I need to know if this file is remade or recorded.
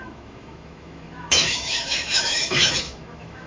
remade